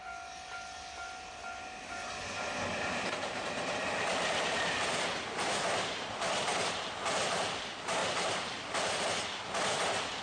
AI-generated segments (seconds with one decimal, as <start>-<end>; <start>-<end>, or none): 8.0-9.0